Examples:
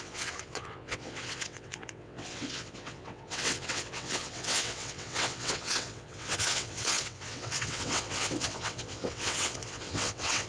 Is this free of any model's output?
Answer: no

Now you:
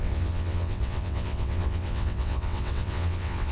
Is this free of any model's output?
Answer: no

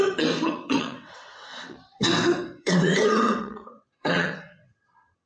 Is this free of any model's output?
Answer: no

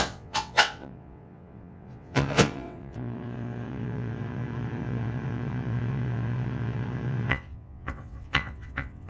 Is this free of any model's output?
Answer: no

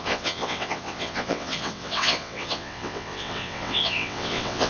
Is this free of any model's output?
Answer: no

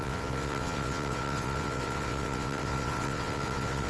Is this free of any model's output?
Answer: no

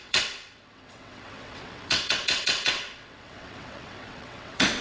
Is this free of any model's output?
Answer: no